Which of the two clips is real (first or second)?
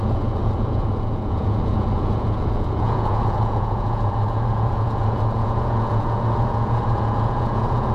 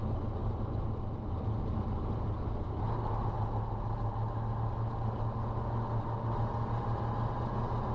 second